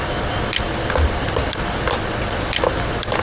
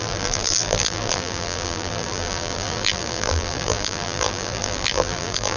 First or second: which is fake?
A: second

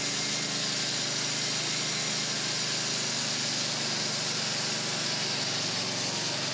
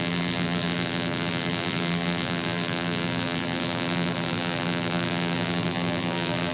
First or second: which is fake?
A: second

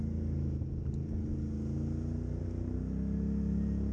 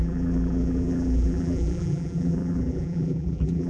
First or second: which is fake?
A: second